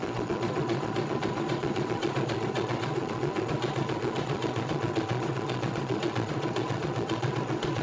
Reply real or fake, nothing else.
fake